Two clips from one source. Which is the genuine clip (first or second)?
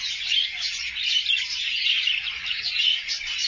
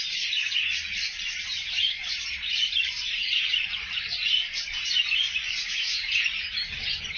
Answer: first